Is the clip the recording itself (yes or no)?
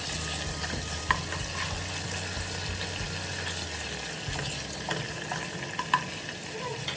yes